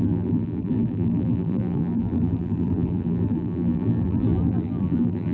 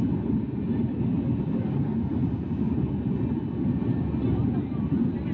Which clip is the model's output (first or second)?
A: first